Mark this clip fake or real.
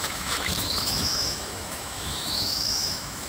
fake